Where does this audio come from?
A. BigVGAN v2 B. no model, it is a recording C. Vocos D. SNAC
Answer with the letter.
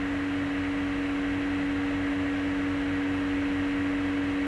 B